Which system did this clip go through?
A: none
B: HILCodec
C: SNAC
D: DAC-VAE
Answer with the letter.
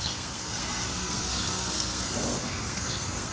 C